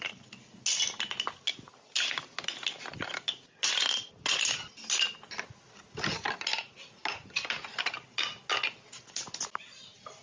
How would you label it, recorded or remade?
recorded